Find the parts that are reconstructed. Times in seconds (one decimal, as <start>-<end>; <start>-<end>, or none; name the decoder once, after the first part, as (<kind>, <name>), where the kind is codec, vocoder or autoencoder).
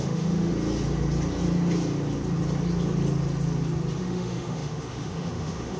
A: 0.0-0.5 (autoencoder, DAC-VAE); 4.0-5.8